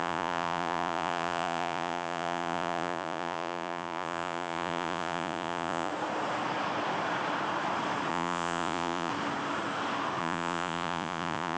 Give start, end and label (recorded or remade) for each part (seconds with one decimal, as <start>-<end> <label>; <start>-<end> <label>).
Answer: 0.0-5.9 remade; 5.9-8.1 recorded; 8.1-9.1 remade; 9.1-10.2 recorded; 10.2-11.6 remade